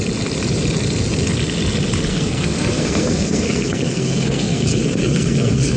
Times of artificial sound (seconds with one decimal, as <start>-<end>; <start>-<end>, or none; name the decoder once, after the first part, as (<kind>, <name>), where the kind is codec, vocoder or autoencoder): 2.1-5.8 (codec, SNAC)